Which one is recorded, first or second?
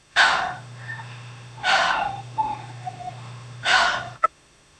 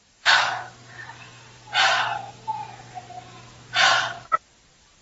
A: second